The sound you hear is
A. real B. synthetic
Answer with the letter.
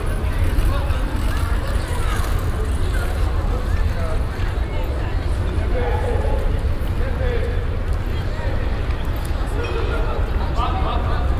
A